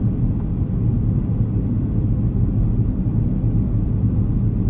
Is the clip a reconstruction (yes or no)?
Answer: no